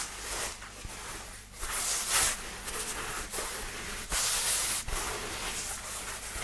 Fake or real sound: real